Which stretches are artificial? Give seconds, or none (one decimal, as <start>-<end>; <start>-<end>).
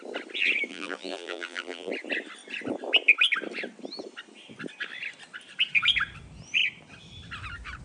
0.7-1.9